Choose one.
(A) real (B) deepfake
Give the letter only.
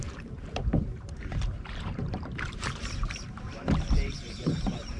B